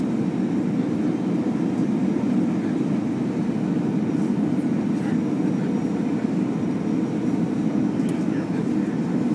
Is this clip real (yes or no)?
yes